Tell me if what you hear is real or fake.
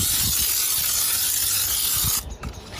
real